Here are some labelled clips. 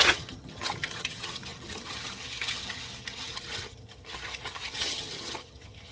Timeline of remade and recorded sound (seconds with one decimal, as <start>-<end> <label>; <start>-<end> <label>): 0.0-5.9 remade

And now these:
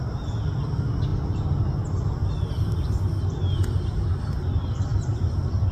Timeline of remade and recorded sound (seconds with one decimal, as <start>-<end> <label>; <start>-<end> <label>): 0.0-4.9 recorded; 4.9-5.7 remade

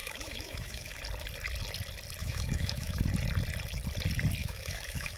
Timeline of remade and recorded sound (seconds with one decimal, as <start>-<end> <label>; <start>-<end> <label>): 0.0-1.0 remade; 1.0-2.2 recorded; 2.2-3.0 remade; 3.0-4.4 recorded; 4.4-5.2 remade